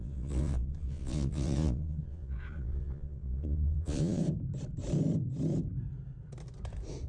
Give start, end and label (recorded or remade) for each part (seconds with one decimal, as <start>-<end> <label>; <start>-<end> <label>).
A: 0.0-4.2 remade; 4.2-7.1 recorded